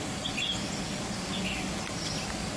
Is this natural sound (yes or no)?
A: yes